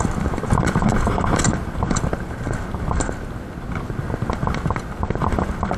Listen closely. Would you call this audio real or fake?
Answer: real